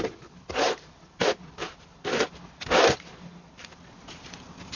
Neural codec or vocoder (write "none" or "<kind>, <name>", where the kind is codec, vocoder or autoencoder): none